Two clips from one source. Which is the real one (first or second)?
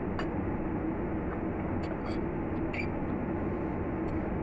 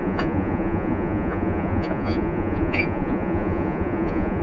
first